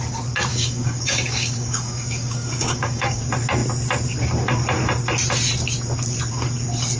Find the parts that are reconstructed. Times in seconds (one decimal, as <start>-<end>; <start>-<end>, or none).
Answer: 0.5-3.2